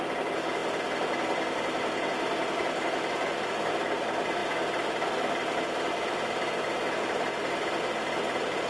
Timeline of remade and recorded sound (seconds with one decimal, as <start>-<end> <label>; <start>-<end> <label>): 0.0-8.7 recorded